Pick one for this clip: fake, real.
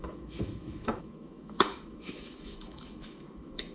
fake